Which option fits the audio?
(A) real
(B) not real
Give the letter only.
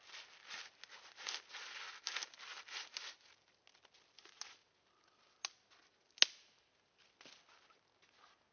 A